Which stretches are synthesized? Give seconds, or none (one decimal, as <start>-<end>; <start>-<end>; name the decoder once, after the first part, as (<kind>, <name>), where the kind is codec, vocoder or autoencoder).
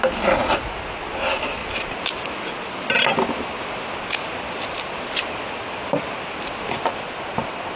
none